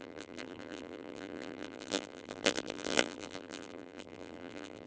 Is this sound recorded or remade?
remade